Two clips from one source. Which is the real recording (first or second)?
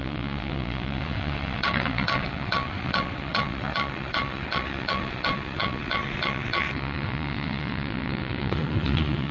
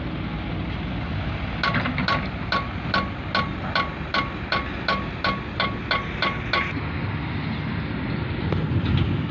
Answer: second